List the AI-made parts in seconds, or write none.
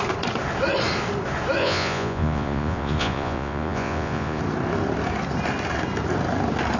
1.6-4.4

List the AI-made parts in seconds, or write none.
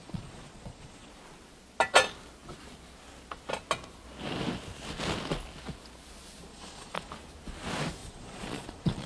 0.0-1.1; 6.5-7.1; 8.0-9.1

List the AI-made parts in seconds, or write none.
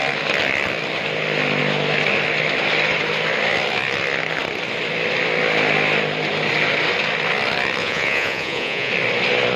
7.8-8.9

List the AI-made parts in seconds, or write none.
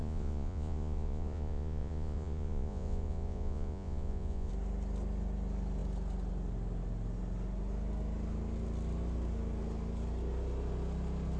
0.0-4.5